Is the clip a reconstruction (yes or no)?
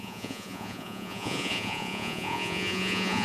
yes